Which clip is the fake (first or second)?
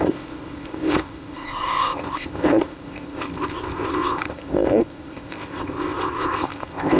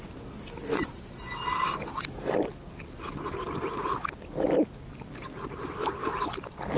first